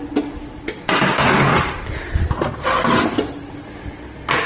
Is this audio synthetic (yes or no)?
no